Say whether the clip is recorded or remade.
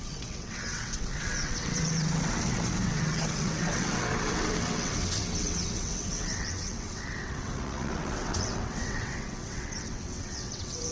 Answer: remade